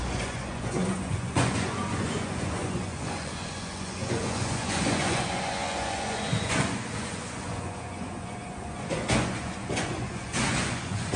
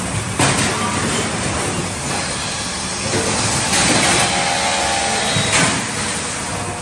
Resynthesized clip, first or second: first